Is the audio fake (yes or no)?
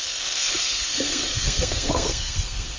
yes